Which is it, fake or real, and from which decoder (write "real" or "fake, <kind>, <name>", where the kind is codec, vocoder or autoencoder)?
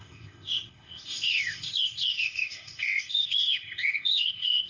fake, codec, ZipCodec